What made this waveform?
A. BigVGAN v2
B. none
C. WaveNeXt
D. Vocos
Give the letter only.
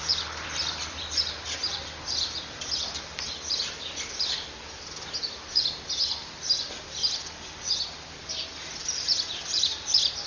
A